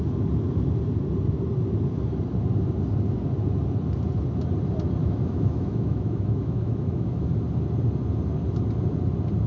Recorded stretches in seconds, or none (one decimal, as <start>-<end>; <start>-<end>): 0.0-5.0; 7.3-9.5